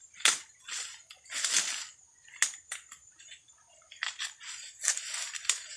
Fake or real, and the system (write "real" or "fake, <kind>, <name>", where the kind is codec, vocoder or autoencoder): real